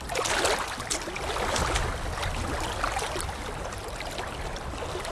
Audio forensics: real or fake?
real